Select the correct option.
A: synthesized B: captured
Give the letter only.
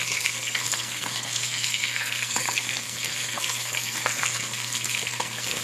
A